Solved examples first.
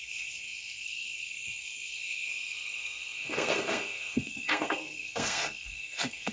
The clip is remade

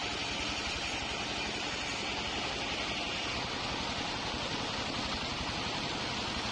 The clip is recorded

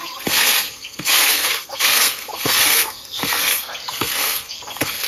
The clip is remade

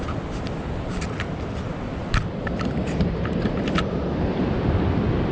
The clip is recorded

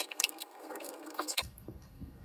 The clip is remade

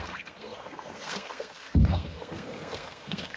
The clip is remade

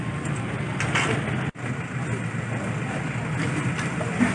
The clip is recorded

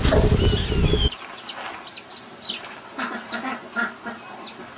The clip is recorded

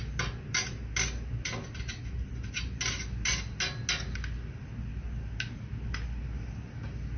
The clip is recorded